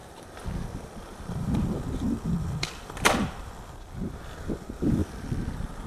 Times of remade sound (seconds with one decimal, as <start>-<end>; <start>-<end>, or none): 0.0-3.5; 5.0-5.9

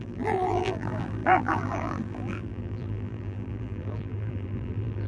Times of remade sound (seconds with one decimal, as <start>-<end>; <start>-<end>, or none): 0.0-5.1

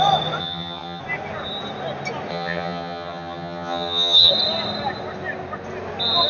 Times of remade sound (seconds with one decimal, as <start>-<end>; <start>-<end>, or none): 0.4-1.0; 2.3-4.3

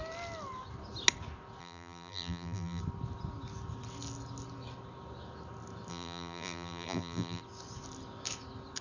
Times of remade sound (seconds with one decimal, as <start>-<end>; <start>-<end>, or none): 1.6-2.8; 5.9-7.4

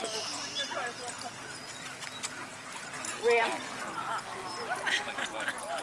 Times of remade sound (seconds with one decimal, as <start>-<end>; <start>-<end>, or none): 2.5-3.1

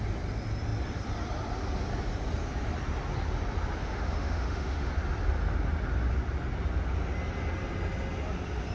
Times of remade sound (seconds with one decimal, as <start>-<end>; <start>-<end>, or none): 3.8-4.9

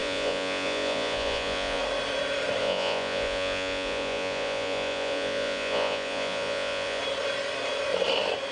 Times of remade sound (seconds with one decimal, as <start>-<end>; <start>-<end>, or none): 0.0-1.8; 2.6-7.0